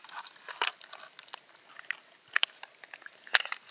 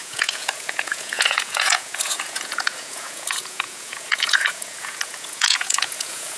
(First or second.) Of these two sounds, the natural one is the first